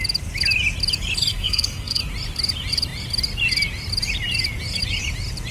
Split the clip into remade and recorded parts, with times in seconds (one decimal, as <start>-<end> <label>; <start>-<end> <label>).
0.0-1.3 recorded; 1.3-2.0 remade; 2.0-5.5 recorded